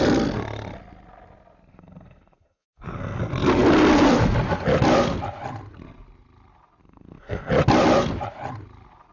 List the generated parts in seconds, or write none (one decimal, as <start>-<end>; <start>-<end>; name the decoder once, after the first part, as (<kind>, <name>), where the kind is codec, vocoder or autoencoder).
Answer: 1.7-3.2 (codec, SNAC); 6.8-7.5